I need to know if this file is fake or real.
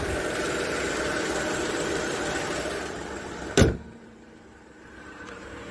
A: fake